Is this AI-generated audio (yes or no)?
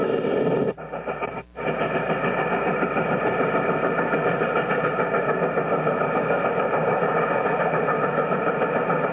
no